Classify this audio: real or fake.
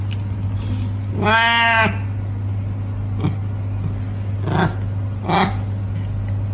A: real